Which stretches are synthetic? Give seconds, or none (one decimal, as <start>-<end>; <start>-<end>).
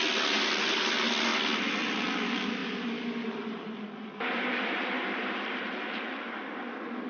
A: 2.6-6.1